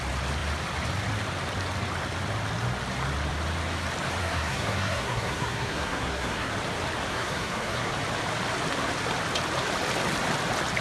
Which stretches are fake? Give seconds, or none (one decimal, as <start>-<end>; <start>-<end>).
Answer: 4.2-6.5; 7.1-7.9